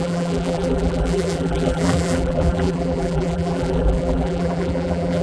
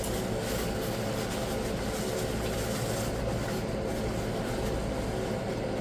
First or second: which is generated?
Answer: first